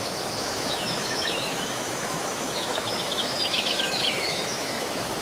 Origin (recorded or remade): remade